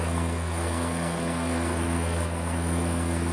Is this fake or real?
fake